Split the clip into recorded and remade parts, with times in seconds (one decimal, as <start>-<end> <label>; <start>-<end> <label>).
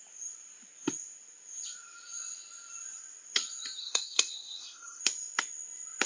0.0-3.8 recorded; 3.8-5.0 remade; 5.0-6.1 recorded